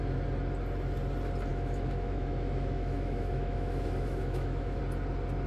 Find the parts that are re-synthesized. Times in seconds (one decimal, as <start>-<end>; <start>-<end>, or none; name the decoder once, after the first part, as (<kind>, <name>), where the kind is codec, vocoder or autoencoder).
1.5-4.8 (autoencoder, DAC-VAE)